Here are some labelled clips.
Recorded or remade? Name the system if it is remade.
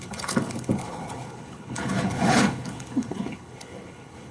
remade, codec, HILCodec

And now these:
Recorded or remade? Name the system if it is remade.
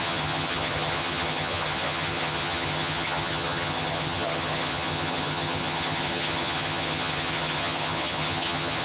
remade, vocoder, HiFi-GAN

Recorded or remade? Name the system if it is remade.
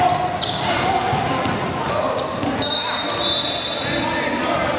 recorded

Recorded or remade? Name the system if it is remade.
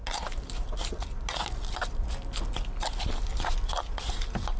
recorded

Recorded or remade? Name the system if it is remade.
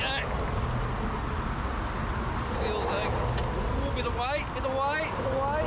recorded